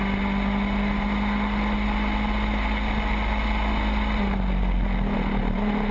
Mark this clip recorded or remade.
recorded